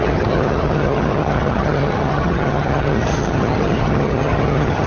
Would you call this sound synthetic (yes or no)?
yes